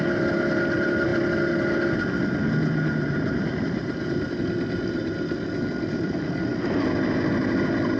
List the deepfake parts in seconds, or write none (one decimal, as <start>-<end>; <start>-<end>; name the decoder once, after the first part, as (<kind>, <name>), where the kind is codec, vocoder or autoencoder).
none